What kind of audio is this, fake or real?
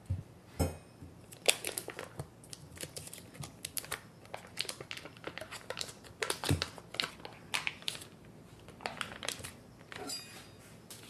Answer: real